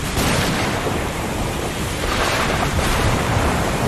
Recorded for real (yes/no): no